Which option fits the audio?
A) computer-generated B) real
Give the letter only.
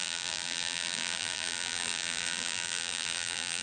A